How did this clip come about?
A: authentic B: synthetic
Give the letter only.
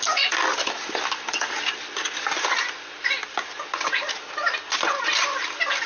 A